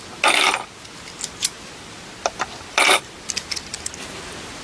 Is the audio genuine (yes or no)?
yes